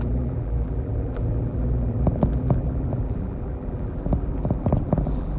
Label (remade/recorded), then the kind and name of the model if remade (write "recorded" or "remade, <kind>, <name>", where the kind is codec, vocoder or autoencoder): remade, vocoder, BigVGAN v2